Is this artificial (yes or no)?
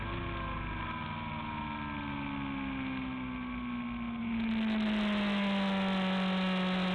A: no